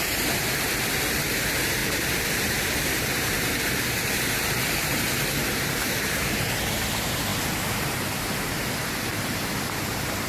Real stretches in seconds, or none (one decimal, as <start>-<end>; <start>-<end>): 8.6-9.9